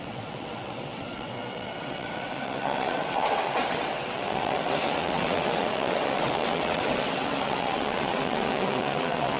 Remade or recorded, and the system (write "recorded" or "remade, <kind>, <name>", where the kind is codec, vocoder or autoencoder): remade, vocoder, WaveNeXt